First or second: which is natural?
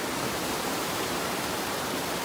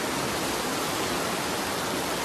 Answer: second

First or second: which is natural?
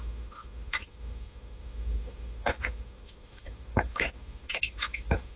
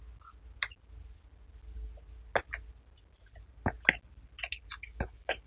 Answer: second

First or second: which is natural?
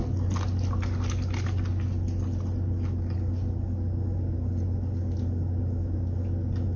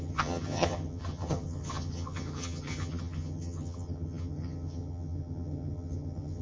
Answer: first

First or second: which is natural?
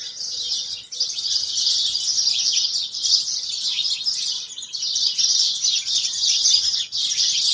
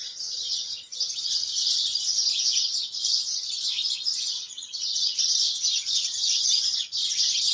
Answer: first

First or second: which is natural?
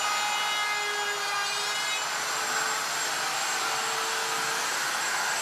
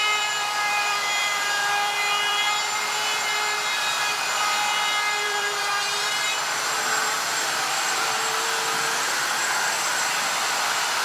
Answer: first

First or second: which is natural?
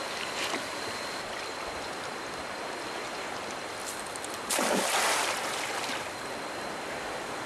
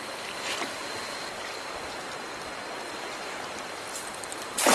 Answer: second